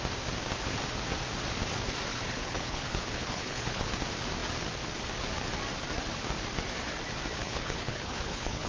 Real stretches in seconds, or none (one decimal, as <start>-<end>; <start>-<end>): 0.0-2.1; 3.9-7.4